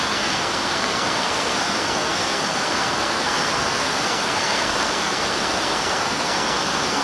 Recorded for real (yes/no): no